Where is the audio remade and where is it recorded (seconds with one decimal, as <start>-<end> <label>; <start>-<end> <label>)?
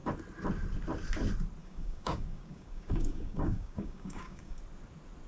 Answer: 0.0-1.6 recorded; 1.6-4.6 remade; 4.6-5.3 recorded